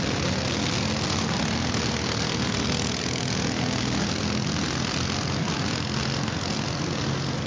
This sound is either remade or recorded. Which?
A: recorded